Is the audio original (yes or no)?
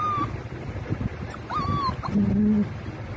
yes